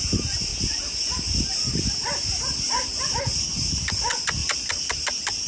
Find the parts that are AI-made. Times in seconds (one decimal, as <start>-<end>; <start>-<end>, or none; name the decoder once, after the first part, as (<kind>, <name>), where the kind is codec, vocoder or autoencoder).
4.4-5.0 (vocoder, BigVGAN v2)